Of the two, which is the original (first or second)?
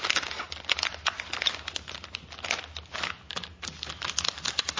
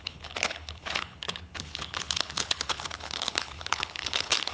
first